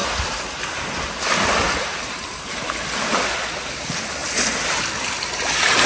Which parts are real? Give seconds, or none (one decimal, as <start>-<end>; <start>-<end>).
0.0-5.9

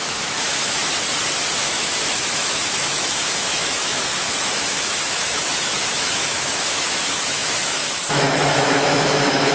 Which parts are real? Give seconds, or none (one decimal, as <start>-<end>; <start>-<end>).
0.8-1.6

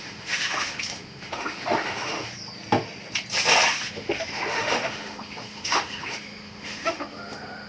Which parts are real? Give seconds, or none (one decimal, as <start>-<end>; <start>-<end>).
2.3-3.7

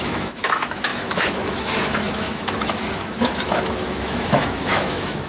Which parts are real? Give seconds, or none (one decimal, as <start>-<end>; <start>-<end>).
none

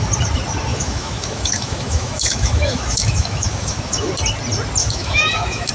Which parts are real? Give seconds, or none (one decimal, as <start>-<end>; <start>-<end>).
0.0-0.7; 4.1-4.8

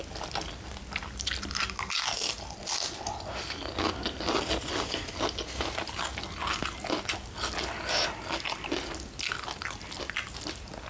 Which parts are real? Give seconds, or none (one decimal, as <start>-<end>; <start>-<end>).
0.0-10.9